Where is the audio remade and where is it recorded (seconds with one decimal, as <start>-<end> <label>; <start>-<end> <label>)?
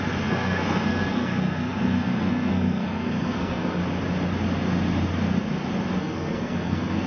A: 0.0-3.8 remade; 3.8-6.0 recorded; 6.0-7.1 remade